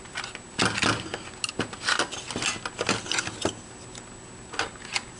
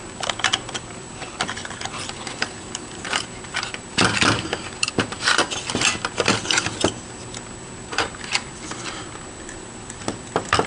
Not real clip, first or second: second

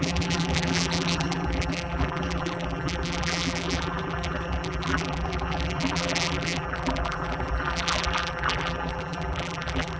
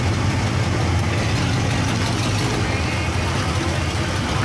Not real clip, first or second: first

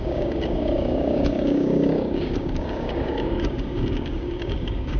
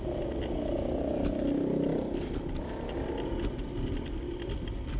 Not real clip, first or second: first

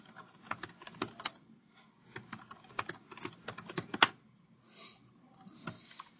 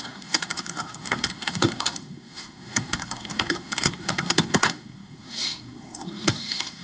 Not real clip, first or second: second